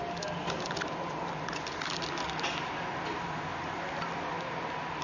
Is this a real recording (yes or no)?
yes